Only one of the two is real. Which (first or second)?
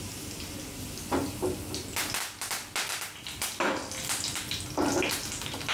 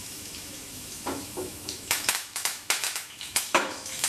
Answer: first